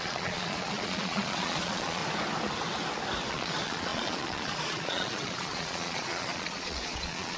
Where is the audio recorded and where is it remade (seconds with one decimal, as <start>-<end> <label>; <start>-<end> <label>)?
0.0-2.0 remade; 2.0-3.3 recorded; 3.3-7.4 remade